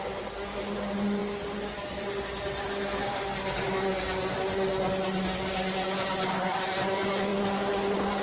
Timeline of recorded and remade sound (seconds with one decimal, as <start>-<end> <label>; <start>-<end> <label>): 0.0-8.2 recorded